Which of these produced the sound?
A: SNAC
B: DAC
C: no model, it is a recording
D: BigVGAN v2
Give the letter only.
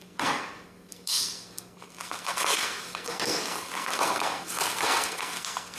A